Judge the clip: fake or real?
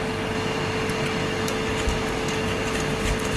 real